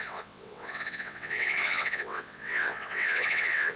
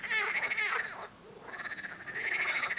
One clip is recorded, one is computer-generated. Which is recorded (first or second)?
second